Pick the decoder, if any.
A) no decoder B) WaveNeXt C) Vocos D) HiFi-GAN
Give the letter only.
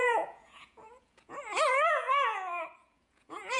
C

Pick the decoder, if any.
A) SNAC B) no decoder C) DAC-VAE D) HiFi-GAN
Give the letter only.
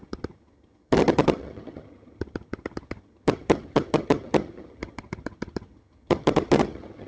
D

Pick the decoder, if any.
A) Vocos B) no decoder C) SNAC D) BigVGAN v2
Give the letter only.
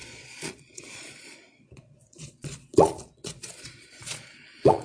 A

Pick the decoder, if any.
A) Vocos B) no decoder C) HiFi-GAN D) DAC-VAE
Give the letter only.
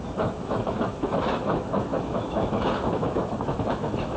D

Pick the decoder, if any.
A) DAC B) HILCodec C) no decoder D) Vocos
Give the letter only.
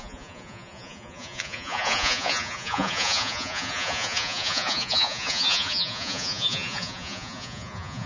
D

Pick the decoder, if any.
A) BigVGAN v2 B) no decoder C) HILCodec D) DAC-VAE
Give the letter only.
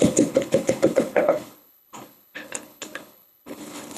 C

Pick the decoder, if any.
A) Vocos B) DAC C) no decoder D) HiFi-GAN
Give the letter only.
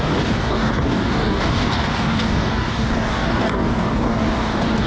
B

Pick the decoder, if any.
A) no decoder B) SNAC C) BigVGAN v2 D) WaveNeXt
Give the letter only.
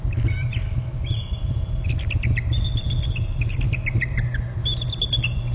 A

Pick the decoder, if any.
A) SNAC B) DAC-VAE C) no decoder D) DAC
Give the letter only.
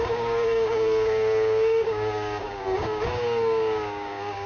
D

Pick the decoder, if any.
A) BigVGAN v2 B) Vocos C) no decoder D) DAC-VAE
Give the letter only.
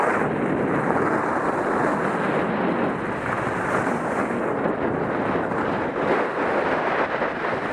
C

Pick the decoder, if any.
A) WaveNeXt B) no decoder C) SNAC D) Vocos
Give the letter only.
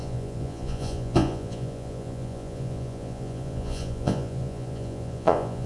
D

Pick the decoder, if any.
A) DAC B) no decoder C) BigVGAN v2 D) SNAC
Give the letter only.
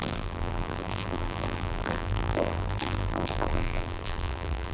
C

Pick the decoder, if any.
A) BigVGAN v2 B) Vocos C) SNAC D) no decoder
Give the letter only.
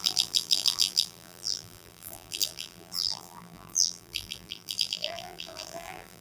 A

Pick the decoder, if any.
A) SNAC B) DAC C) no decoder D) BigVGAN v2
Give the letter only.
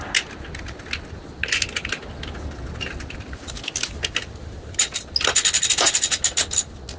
C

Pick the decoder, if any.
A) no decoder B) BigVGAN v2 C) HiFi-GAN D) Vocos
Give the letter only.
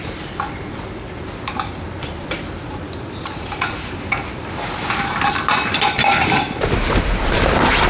A